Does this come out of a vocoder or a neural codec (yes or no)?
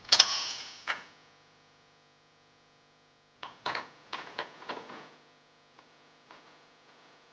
yes